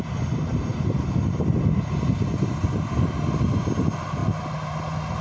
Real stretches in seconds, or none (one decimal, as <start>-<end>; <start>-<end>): 0.0-5.2